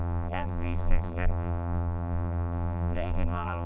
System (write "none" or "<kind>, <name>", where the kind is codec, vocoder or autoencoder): vocoder, BigVGAN v2